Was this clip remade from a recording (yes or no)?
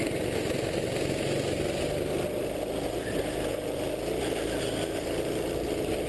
no